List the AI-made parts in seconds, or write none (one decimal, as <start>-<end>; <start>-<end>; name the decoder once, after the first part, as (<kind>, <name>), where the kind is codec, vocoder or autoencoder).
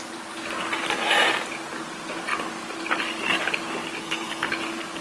4.0-4.5 (codec, SNAC)